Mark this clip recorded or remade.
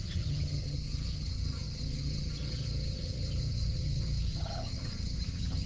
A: remade